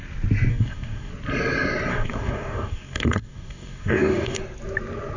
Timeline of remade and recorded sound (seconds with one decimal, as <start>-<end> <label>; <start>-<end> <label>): 0.0-0.5 recorded; 0.5-1.1 remade; 1.1-1.9 recorded; 1.9-4.4 remade; 4.4-5.2 recorded